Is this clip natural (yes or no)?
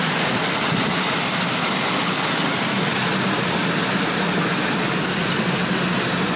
yes